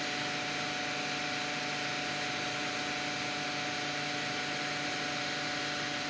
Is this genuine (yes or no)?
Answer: yes